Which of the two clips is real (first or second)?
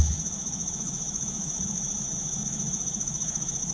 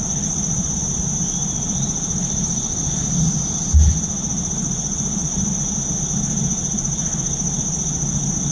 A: second